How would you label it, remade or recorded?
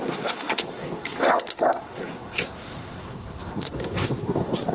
remade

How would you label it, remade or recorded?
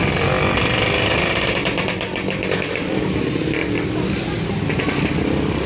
recorded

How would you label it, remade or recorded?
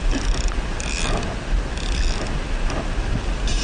recorded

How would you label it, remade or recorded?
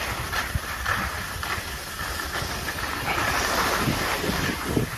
recorded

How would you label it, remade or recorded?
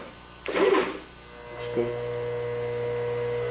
recorded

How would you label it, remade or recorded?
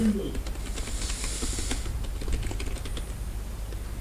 recorded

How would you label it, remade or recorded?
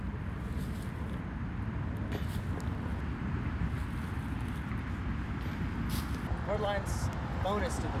recorded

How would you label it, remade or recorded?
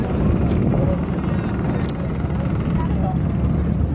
recorded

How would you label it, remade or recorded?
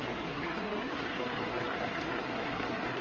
remade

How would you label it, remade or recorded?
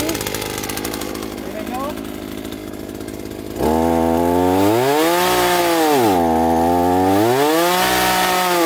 recorded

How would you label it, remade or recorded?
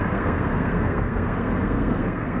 remade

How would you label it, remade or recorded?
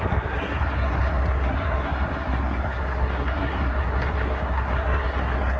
remade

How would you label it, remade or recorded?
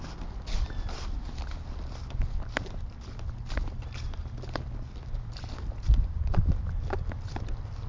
recorded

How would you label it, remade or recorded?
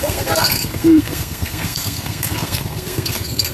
remade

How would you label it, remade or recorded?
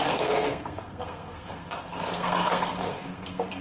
remade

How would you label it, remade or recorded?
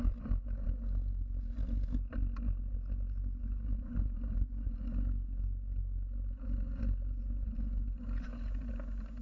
recorded